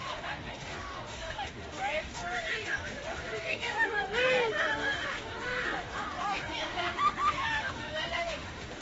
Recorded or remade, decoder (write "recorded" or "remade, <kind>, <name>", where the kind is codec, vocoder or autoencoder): remade, autoencoder, DAC-VAE